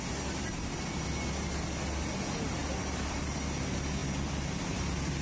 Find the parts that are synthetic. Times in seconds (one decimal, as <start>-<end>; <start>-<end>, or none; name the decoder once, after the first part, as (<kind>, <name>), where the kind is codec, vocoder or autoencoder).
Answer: none